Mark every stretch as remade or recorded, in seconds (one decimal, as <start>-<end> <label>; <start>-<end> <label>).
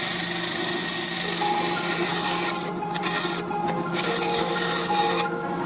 0.0-5.7 recorded